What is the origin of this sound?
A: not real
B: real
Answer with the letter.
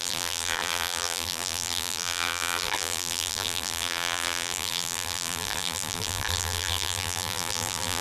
A